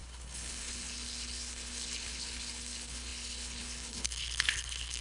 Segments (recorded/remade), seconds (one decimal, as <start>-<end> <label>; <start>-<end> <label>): 0.0-5.0 remade